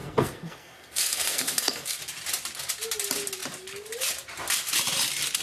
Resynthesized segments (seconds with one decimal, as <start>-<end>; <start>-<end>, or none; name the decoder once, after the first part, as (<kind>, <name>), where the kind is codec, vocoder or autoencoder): 0.0-2.0 (codec, SNAC)